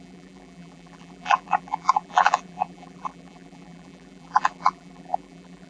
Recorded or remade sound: remade